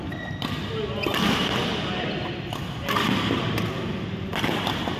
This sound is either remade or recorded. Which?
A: recorded